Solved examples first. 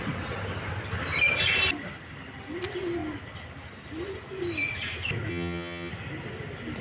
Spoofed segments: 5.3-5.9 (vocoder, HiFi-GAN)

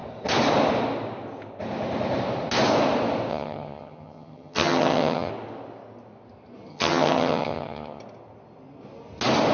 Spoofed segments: 3.3-5.3 (vocoder, HiFi-GAN); 6.7-8.0

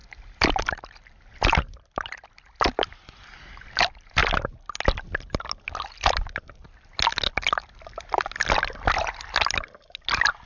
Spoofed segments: none

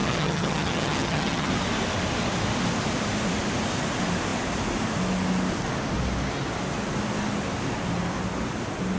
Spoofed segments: 0.0-1.5 (vocoder, HiFi-GAN)